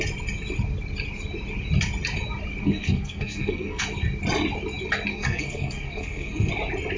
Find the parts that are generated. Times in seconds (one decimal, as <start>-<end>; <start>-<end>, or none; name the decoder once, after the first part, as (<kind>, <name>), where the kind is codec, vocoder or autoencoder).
2.6-3.8 (codec, SNAC); 5.1-6.5